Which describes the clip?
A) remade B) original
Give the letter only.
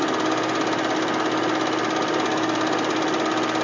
B